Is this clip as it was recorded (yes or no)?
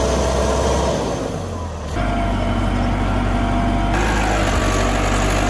yes